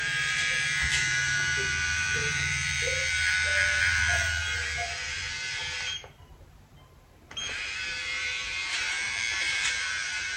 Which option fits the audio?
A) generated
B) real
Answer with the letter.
A